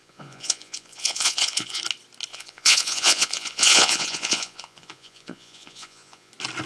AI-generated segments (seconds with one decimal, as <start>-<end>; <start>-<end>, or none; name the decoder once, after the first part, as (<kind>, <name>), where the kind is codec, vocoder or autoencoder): 0.0-1.8 (vocoder, Vocos); 2.3-6.3